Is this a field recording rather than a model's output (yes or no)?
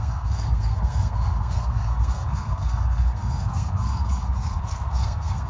no